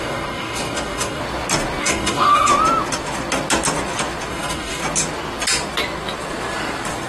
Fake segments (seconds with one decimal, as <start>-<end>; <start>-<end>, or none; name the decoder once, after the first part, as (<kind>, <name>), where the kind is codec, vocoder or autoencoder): 0.0-1.2 (codec, DAC); 1.8-2.5; 4.3-4.8